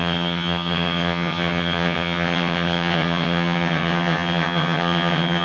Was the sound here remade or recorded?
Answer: remade